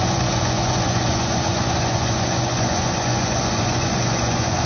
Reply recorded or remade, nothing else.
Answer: remade